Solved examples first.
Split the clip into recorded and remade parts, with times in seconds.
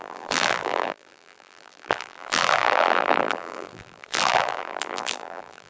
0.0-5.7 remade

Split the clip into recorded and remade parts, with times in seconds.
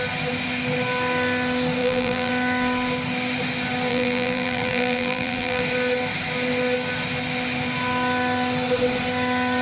0.0-1.8 recorded; 1.8-2.3 remade; 2.3-3.9 recorded; 3.9-5.6 remade; 5.6-9.6 recorded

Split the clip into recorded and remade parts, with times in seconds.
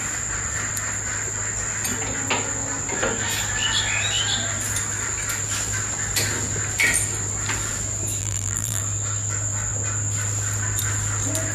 0.0-8.2 recorded; 8.2-8.8 remade; 8.8-11.5 recorded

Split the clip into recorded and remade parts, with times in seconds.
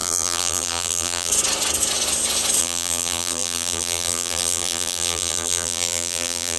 0.0-1.3 remade; 1.3-2.6 recorded; 2.6-6.6 remade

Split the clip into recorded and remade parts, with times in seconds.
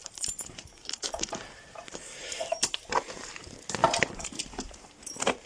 0.0-3.3 remade; 3.3-3.8 recorded; 3.8-4.9 remade; 4.9-5.5 recorded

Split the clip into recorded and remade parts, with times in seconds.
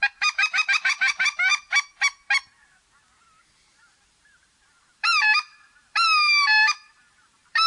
0.0-1.5 remade; 1.5-3.4 recorded; 3.4-7.7 remade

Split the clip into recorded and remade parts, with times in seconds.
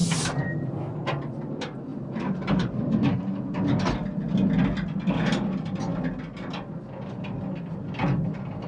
0.0-1.9 recorded; 1.9-3.6 remade; 3.6-8.7 recorded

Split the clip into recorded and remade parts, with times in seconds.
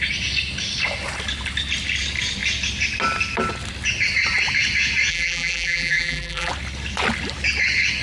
0.0-5.1 recorded; 5.1-6.5 remade; 6.5-8.0 recorded